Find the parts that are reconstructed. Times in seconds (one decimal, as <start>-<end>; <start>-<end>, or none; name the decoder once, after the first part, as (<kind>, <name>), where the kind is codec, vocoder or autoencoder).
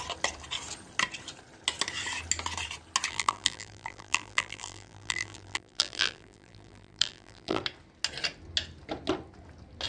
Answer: 3.1-7.6 (vocoder, BigVGAN v2)